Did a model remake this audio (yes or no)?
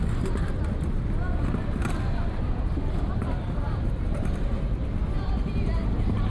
no